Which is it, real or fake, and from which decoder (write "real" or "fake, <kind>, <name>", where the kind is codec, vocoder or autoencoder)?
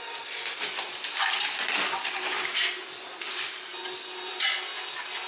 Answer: real